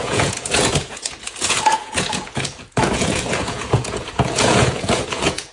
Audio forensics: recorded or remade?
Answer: remade